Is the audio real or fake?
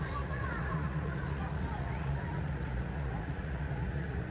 fake